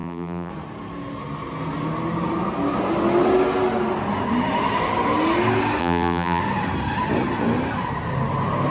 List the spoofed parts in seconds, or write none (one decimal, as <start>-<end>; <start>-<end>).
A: 0.0-0.5; 5.8-6.4